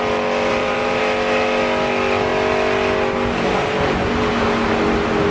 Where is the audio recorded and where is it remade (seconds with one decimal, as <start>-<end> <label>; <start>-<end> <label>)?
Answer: 0.0-0.5 recorded; 0.5-1.0 remade; 1.0-5.3 recorded